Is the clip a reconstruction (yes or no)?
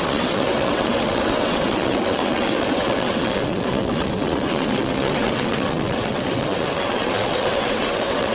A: yes